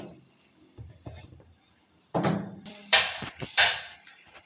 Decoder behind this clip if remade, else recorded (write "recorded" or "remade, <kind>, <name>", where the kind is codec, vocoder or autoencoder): remade, vocoder, BigVGAN v2